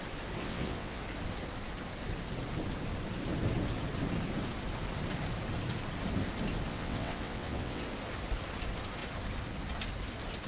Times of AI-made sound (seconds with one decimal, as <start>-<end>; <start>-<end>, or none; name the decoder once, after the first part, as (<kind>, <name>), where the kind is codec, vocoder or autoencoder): 0.4-1.0 (vocoder, WaveNeXt); 6.7-7.8